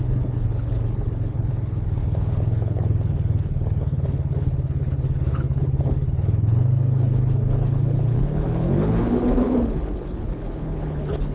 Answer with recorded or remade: remade